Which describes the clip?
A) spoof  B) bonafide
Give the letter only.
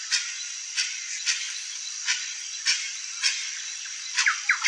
B